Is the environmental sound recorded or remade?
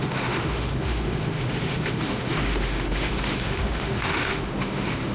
remade